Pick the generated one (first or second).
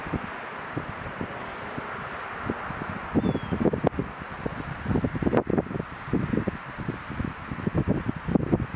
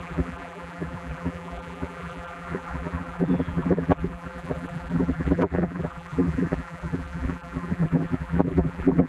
second